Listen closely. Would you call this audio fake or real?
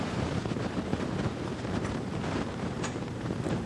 fake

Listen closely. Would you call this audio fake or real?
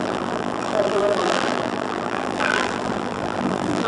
fake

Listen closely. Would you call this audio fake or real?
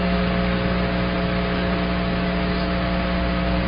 real